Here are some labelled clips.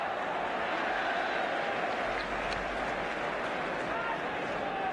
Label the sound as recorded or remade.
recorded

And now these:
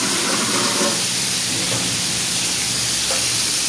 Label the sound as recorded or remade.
recorded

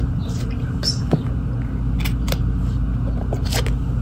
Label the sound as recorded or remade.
recorded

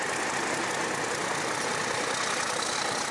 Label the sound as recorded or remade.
recorded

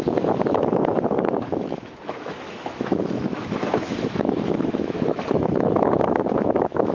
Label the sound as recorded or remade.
remade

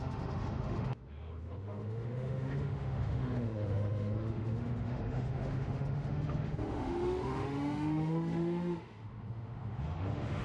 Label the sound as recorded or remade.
remade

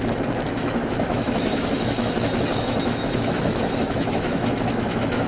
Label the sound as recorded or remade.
remade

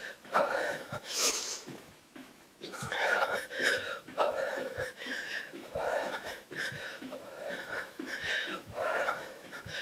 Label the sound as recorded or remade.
remade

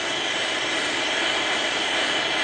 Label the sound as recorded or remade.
recorded